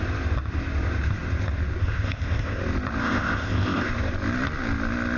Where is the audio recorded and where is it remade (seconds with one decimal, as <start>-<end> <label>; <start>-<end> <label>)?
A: 0.0-1.8 recorded; 1.8-2.6 remade; 2.6-3.0 recorded; 3.0-3.9 remade; 3.9-5.2 recorded